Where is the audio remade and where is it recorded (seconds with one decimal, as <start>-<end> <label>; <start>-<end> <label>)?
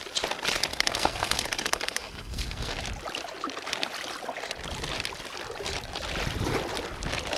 0.0-0.7 recorded; 0.7-2.8 remade; 2.8-7.4 recorded